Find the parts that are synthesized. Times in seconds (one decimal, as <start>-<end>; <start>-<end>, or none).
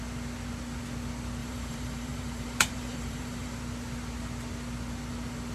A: 1.4-3.6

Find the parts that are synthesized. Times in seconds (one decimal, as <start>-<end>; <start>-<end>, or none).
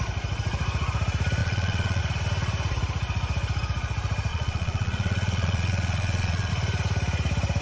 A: 1.4-2.0; 4.3-6.5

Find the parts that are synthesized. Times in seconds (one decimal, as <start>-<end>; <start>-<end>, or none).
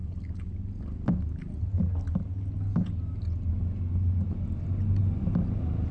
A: none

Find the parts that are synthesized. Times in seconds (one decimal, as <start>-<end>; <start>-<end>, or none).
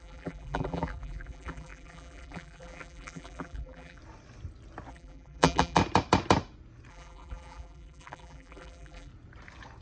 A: 0.0-4.0; 4.9-5.8; 6.9-9.1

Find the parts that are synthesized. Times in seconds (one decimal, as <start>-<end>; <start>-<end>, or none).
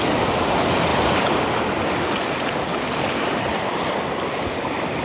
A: none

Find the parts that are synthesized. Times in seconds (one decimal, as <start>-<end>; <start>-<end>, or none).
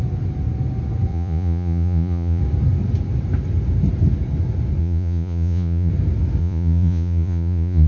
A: 1.1-2.4; 4.8-5.9; 6.4-7.9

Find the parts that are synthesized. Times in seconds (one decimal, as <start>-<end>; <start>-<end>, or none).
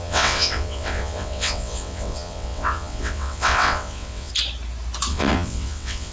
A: 0.0-4.3; 5.1-6.1